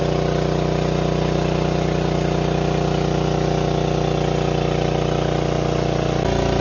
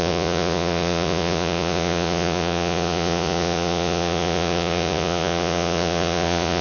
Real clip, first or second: first